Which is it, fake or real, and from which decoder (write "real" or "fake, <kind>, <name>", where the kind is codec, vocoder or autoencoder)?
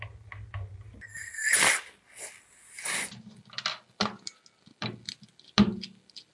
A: real